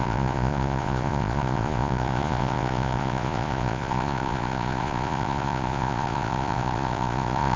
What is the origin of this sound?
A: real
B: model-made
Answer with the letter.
B